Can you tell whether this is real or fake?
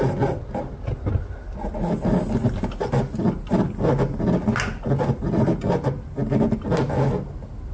real